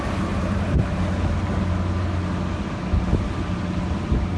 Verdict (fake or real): real